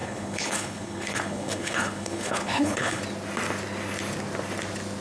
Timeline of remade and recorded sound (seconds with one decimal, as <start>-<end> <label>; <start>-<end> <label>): 0.0-3.0 remade; 3.0-5.0 recorded